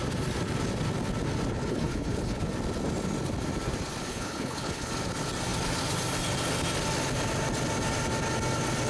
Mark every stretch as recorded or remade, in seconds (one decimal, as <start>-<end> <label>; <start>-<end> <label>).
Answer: 0.0-1.6 recorded; 1.6-2.4 remade; 2.4-4.1 recorded; 4.1-4.9 remade; 4.9-8.9 recorded